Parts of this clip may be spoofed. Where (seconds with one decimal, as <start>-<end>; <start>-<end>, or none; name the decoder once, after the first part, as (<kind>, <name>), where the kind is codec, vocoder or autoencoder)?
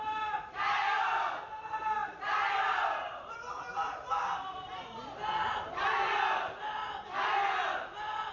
2.0-5.7 (vocoder, BigVGAN v2)